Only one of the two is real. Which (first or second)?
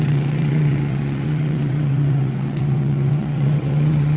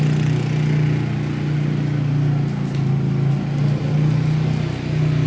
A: second